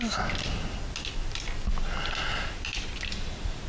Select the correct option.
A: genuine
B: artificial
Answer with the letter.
A